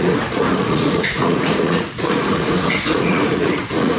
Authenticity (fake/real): fake